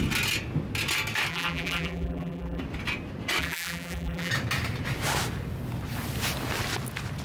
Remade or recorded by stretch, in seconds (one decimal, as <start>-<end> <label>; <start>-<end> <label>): 0.0-1.3 recorded; 1.3-2.6 remade; 2.6-3.4 recorded; 3.4-4.3 remade; 4.3-7.2 recorded